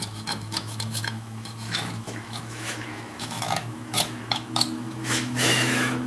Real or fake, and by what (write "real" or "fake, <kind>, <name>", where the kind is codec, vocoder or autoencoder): fake, autoencoder, DAC-VAE